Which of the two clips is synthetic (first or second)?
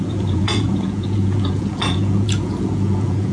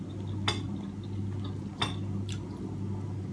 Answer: first